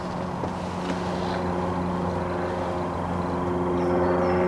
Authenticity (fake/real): real